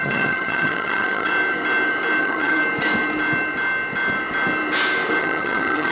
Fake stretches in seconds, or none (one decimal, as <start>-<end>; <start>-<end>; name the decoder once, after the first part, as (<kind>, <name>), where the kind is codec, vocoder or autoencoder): 0.0-1.3 (vocoder, HiFi-GAN); 2.2-2.6; 5.2-5.9